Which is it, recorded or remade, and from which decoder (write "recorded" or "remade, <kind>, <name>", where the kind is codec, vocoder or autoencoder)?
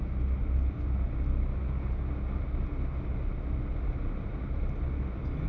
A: recorded